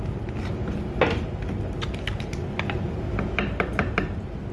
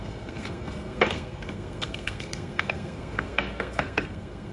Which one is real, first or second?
first